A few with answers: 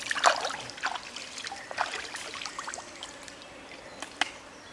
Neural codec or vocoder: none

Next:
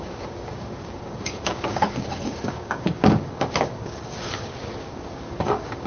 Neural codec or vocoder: codec, DAC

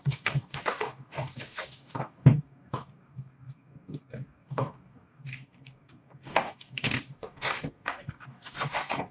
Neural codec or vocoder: codec, DAC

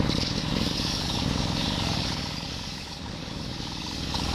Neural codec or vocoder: codec, DAC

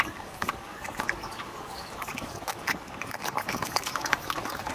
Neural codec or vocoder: codec, DAC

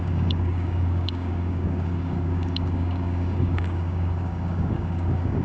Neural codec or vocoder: codec, DAC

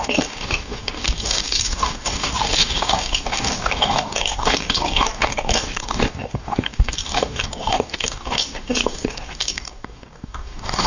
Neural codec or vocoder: codec, DAC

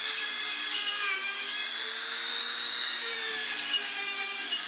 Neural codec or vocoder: codec, DAC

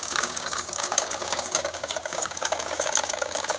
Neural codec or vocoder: codec, DAC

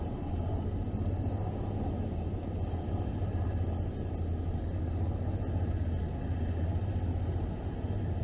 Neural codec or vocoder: none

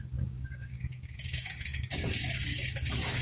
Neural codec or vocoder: codec, DAC